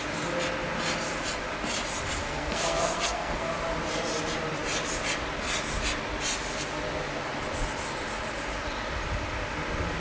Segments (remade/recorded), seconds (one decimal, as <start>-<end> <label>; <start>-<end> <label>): 0.0-2.2 recorded; 2.2-3.5 remade; 3.5-10.0 recorded